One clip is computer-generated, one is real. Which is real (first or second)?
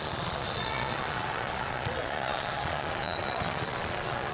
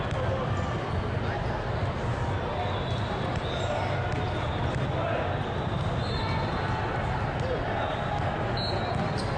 second